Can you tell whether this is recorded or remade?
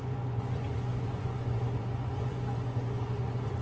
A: remade